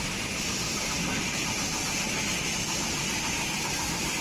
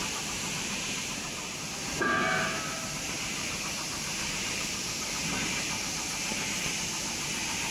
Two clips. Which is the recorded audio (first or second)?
first